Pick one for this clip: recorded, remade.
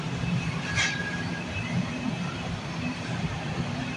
remade